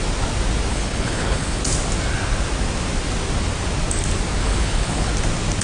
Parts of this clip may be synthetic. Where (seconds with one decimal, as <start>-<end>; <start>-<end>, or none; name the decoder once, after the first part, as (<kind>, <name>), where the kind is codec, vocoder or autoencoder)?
0.7-1.6 (codec, HILCodec); 4.4-5.1